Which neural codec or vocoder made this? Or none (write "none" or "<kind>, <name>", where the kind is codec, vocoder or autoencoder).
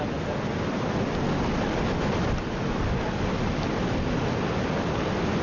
none